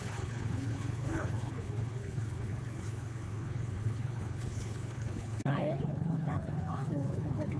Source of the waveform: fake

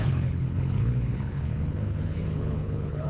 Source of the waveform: fake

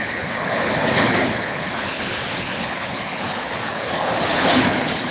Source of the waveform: fake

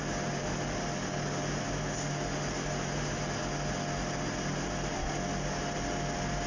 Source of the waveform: real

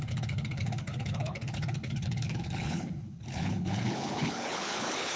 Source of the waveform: fake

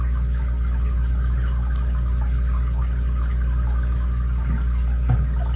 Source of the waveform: real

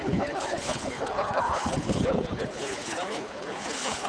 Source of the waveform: fake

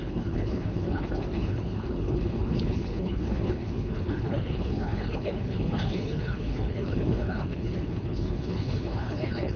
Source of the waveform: fake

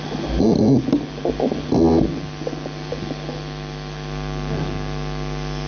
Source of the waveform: real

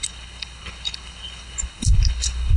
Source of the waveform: fake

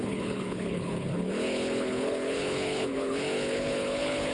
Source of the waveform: fake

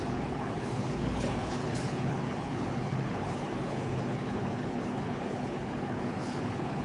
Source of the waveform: fake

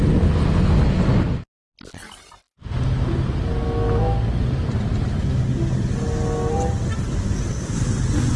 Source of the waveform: real